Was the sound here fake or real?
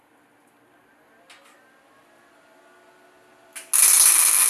real